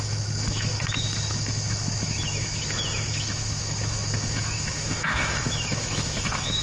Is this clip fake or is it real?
fake